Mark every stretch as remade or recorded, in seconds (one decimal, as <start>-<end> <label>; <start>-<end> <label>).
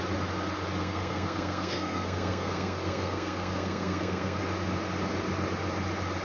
0.0-0.8 recorded; 0.8-4.4 remade; 4.4-6.2 recorded